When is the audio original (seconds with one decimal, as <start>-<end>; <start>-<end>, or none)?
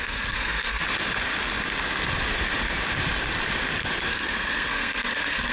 0.8-4.1